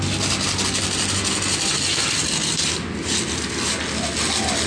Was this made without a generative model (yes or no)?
yes